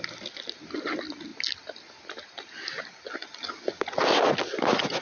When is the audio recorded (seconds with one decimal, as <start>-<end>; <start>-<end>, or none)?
0.0-5.0

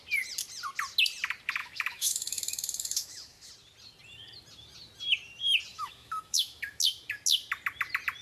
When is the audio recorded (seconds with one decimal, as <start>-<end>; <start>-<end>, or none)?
0.0-1.6; 3.5-5.7; 6.8-8.2

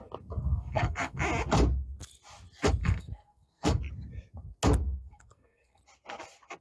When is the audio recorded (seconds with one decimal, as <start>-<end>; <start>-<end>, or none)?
0.0-0.4; 1.2-2.8; 3.8-4.8; 5.8-6.6

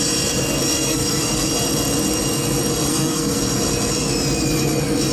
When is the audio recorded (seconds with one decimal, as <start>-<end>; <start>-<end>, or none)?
0.0-0.7; 1.5-2.9; 3.4-5.1

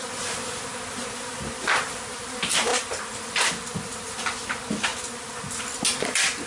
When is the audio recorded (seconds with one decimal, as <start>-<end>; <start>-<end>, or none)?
0.0-6.5